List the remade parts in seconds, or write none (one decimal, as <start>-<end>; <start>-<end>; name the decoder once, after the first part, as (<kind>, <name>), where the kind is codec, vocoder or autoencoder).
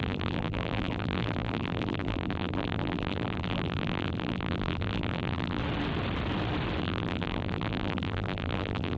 0.0-5.6 (vocoder, BigVGAN v2); 6.8-9.0